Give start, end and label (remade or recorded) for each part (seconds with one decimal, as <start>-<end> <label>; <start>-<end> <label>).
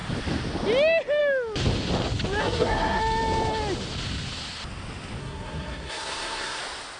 0.0-2.4 recorded; 2.4-3.0 remade; 3.0-5.2 recorded; 5.2-6.6 remade; 6.6-7.0 recorded